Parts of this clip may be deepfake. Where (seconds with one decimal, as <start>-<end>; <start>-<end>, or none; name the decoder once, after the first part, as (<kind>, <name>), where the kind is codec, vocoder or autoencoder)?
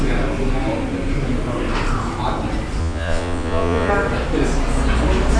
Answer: 2.8-3.9 (vocoder, Vocos)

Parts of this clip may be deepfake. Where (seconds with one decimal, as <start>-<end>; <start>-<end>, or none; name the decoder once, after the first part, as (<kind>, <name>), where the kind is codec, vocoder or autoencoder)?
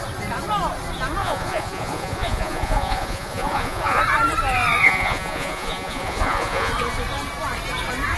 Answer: 1.2-4.0 (vocoder, Vocos); 4.8-6.7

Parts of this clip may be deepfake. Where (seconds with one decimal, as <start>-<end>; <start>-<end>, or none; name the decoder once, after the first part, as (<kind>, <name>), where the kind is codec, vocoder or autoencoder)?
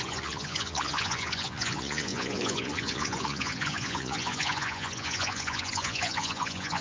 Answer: 0.0-6.8 (vocoder, Vocos)